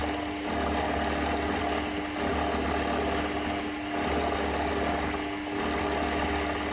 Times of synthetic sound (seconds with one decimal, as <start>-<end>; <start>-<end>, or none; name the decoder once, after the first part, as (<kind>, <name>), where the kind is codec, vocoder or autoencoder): none